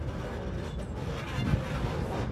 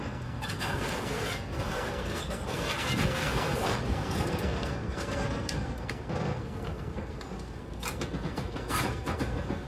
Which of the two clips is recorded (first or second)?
first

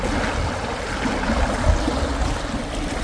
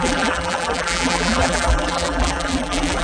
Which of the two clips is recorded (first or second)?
first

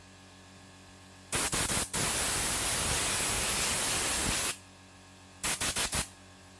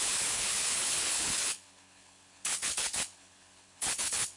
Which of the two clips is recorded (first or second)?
first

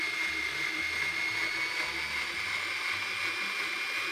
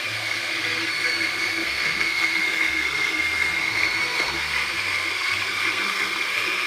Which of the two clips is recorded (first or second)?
first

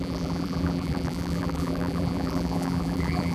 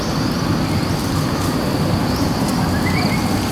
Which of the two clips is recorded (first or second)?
second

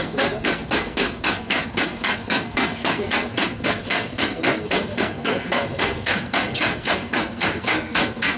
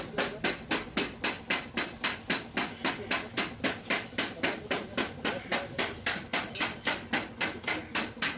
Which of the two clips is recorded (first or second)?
second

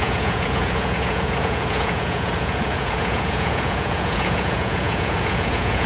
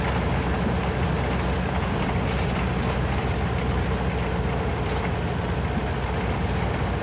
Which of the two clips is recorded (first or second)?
second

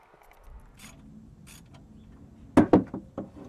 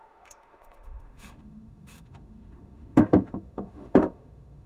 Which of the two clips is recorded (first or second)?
first